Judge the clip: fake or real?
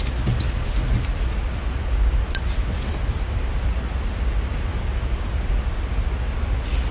real